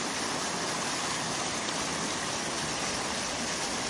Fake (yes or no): no